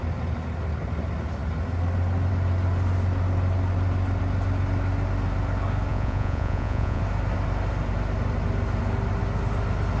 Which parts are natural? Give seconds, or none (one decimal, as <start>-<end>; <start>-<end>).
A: 0.0-5.9; 7.0-10.0